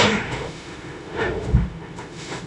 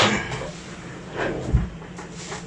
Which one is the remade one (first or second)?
first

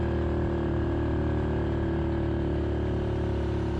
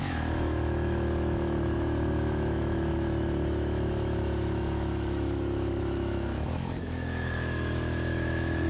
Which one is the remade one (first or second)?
second